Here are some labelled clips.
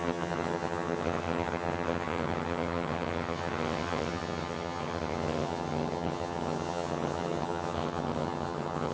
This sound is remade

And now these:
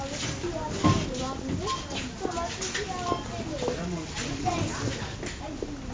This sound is recorded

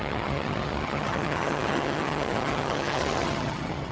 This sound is remade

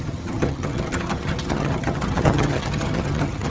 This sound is remade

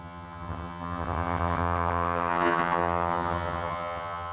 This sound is remade